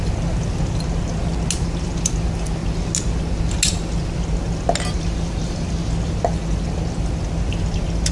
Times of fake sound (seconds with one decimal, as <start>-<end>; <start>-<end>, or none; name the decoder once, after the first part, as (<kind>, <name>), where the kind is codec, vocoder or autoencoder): none